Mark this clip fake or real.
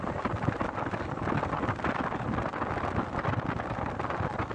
real